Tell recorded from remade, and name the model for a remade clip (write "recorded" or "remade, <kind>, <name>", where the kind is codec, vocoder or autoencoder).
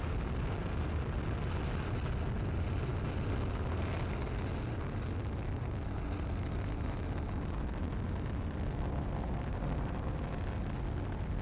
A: recorded